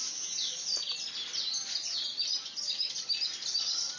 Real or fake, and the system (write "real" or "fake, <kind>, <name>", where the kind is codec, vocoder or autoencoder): real